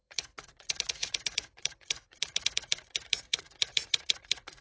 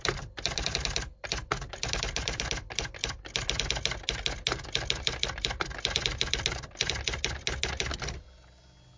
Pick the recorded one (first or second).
second